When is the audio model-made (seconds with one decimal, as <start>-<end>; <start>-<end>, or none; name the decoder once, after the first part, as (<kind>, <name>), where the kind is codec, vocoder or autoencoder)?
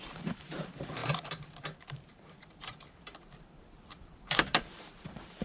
0.0-5.4 (vocoder, BigVGAN v2)